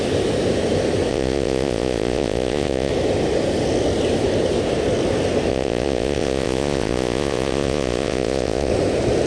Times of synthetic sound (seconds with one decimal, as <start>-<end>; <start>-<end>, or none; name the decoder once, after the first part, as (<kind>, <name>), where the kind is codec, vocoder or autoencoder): 1.1-2.9 (vocoder, Vocos); 5.5-8.7